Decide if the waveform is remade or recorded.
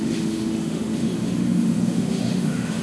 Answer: remade